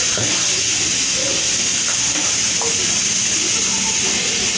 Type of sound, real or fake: real